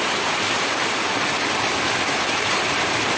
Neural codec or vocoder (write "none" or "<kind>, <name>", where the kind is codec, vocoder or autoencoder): none